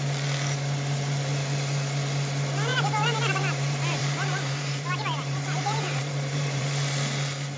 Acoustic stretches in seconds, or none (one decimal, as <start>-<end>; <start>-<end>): 0.0-2.7; 6.7-7.6